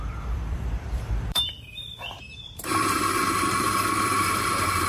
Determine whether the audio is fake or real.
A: fake